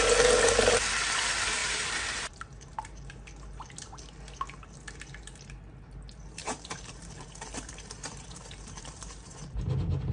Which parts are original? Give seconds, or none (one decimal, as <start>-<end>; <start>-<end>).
0.0-1.6; 3.1-6.4; 9.7-10.1